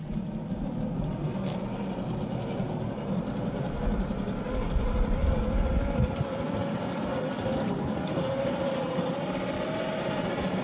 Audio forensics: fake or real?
real